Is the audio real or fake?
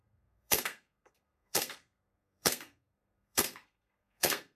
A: fake